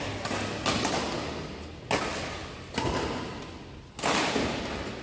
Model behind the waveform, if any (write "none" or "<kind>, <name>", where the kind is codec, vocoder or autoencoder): none